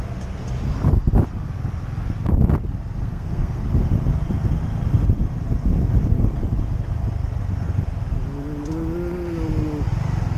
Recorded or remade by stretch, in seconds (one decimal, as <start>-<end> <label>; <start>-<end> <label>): 0.0-3.0 recorded; 3.0-3.6 remade; 3.6-10.4 recorded